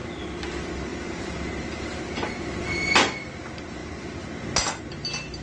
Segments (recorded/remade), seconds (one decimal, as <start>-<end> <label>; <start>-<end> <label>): 0.0-0.9 recorded; 0.9-2.3 remade; 2.3-5.4 recorded